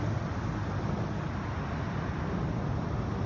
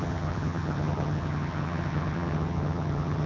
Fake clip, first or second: second